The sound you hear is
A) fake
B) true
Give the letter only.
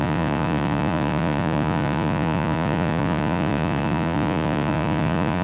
A